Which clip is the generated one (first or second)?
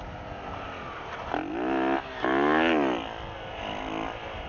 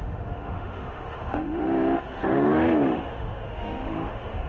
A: second